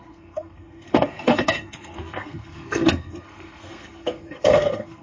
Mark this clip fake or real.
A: fake